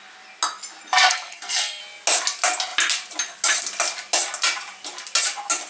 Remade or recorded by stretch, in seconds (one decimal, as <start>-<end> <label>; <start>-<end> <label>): 0.0-1.1 recorded; 1.1-1.8 remade; 1.8-5.7 recorded